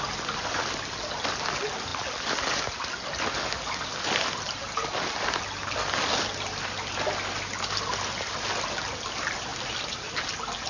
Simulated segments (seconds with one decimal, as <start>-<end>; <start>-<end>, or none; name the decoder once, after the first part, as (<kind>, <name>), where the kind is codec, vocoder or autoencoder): none